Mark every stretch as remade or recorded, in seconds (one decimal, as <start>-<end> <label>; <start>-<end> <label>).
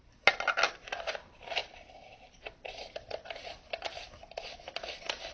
0.0-5.3 recorded